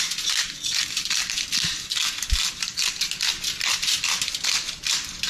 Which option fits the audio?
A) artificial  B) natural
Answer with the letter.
B